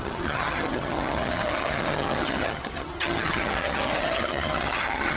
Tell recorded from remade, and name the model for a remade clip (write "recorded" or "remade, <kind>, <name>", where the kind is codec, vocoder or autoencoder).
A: remade, vocoder, HiFi-GAN